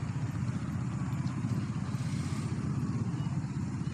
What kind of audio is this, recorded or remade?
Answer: recorded